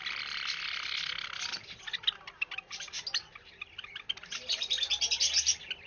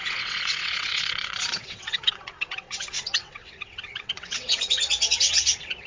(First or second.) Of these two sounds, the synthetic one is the second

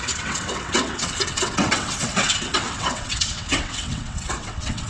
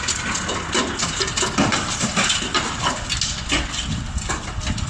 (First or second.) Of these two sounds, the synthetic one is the first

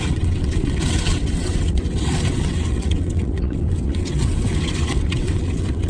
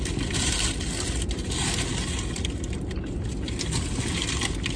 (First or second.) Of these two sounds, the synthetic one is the first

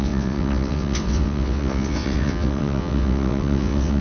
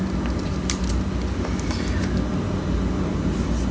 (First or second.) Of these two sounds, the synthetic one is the first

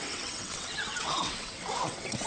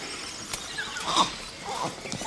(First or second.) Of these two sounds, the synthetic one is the first